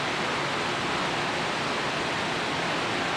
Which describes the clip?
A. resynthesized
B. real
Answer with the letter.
B